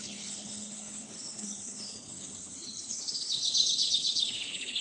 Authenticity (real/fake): fake